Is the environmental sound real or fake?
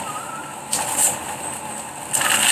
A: real